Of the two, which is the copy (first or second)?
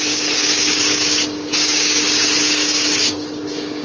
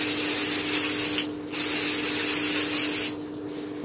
first